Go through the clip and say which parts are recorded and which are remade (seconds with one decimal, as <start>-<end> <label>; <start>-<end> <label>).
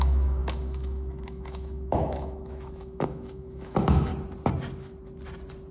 0.0-4.1 remade; 4.1-5.7 recorded